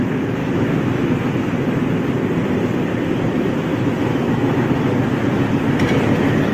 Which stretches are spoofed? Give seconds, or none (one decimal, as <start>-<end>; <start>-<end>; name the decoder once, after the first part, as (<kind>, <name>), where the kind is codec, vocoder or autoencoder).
0.4-1.1 (autoencoder, DAC-VAE); 3.7-4.7